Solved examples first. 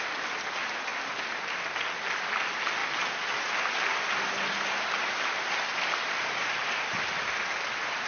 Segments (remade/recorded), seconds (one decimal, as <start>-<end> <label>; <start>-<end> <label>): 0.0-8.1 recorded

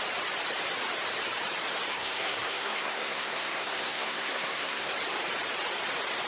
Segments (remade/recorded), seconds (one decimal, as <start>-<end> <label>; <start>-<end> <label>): 0.0-1.9 recorded; 1.9-4.9 remade; 4.9-6.3 recorded

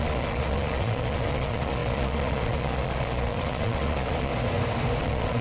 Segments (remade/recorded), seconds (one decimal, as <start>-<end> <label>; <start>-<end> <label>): 0.0-4.3 remade; 4.3-5.0 recorded; 5.0-5.4 remade

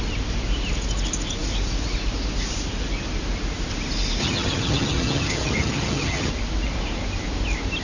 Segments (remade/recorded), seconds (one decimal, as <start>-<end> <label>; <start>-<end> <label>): 0.0-4.2 recorded; 4.2-6.3 remade; 6.3-7.8 recorded

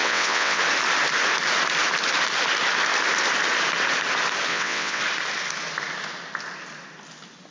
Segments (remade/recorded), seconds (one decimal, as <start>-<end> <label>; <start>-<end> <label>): 0.0-0.6 remade; 0.6-4.5 recorded; 4.5-5.0 remade; 5.0-7.5 recorded

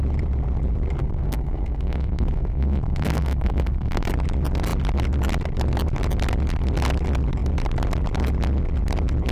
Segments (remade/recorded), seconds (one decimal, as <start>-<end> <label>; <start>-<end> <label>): 0.0-1.0 recorded; 1.0-4.1 remade; 4.1-9.3 recorded

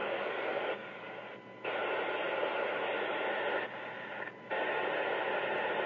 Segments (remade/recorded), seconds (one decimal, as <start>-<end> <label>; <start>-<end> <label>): 0.0-1.1 remade; 1.1-5.9 recorded